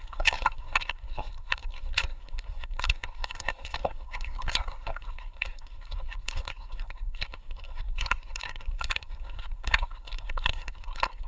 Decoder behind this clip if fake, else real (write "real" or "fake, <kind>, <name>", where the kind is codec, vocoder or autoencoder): fake, codec, SNAC